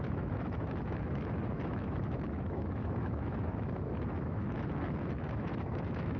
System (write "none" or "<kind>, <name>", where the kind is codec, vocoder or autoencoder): autoencoder, DAC-VAE